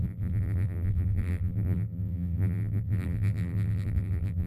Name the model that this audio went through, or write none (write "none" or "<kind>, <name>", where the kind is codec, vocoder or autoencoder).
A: vocoder, BigVGAN v2